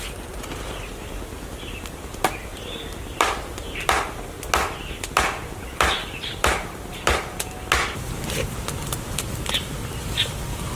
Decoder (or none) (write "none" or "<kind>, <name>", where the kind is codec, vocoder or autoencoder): none